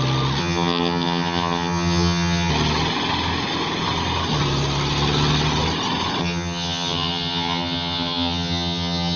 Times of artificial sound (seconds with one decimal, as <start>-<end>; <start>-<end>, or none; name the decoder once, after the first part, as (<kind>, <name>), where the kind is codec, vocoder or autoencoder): 0.4-2.5 (vocoder, HiFi-GAN); 6.2-9.2